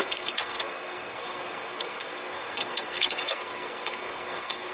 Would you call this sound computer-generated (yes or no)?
yes